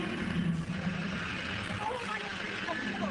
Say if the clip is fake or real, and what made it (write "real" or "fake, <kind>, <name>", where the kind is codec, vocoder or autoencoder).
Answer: real